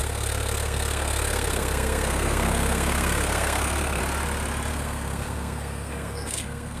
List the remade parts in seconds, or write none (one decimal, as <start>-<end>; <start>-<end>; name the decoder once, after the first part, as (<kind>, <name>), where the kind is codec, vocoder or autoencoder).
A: 0.0-4.0 (codec, SNAC); 4.7-6.8